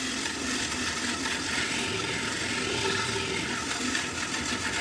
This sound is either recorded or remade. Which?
recorded